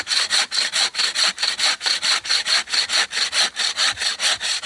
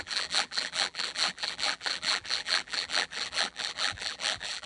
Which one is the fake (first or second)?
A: second